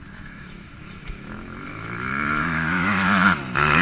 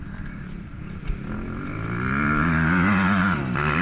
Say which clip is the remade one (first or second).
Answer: first